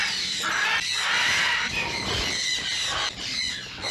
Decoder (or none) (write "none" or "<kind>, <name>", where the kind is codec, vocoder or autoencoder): vocoder, BigVGAN v2